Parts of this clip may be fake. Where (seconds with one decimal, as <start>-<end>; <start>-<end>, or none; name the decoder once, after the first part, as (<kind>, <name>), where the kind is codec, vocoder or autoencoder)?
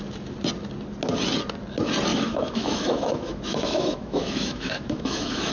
2.1-5.5 (autoencoder, DAC-VAE)